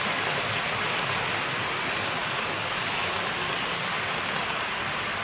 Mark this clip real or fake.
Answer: real